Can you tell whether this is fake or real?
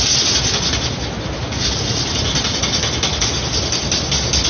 real